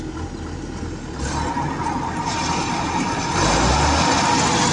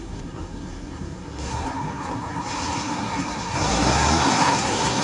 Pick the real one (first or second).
first